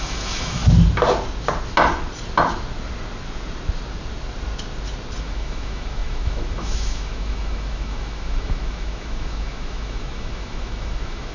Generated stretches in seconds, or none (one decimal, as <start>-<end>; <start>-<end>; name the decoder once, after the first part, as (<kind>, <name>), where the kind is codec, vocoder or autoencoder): 0.0-0.6 (autoencoder, DAC-VAE); 5.2-11.3

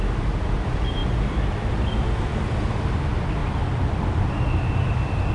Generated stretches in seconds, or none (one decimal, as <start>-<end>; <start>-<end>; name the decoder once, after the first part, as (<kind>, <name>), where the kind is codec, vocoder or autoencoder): 3.4-4.3 (vocoder, BigVGAN v2)

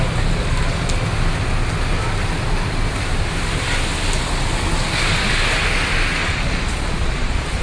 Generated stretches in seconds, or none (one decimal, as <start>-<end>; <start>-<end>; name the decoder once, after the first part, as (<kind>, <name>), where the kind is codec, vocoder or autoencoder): 6.2-7.6 (vocoder, Vocos)

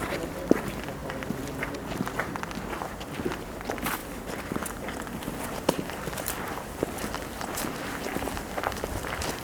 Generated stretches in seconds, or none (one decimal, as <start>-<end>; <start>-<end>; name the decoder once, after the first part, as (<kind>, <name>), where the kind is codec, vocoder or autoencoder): 0.0-9.4 (vocoder, BigVGAN v2)

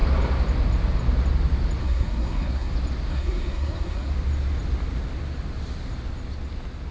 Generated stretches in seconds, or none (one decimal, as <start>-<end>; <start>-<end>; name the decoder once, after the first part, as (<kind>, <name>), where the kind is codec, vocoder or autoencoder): 1.8-2.7 (codec, SNAC); 3.1-4.1

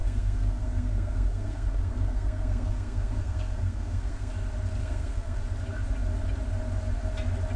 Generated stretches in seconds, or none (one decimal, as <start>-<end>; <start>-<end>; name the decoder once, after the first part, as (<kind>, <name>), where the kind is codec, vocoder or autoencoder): 0.0-4.3 (codec, SNAC); 4.8-5.4

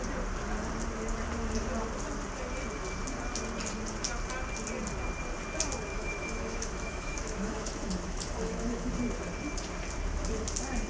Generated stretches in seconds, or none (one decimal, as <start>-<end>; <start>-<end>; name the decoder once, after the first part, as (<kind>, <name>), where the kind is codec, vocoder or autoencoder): 5.9-8.9 (autoencoder, DAC-VAE)

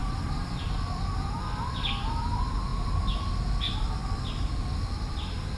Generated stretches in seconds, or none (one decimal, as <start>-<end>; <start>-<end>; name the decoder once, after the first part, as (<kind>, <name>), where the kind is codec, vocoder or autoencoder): none